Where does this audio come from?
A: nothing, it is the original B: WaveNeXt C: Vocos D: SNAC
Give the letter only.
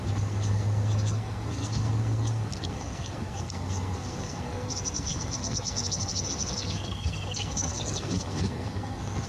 D